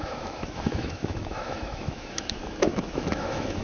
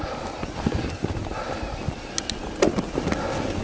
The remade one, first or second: first